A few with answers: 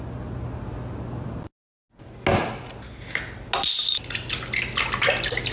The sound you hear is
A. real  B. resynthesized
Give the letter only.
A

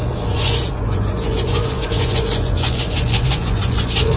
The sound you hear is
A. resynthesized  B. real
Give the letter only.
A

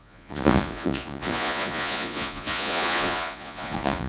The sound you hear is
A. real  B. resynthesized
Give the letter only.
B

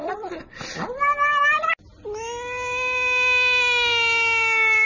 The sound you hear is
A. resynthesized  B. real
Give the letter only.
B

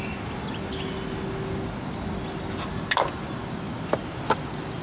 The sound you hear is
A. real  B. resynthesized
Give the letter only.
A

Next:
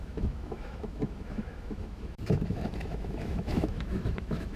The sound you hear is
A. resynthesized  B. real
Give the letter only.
A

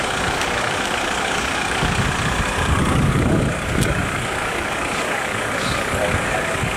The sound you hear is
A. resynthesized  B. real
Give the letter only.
A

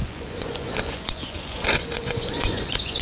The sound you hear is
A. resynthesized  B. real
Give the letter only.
A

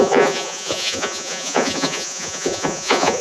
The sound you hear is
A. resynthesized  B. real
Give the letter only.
A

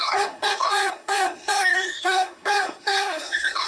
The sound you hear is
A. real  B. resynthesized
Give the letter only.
B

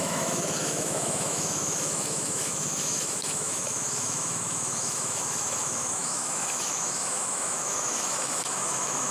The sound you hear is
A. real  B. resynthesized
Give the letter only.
B